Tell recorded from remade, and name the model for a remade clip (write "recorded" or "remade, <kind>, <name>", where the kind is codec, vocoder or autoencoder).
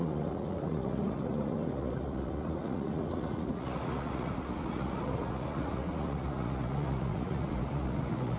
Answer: remade, vocoder, Vocos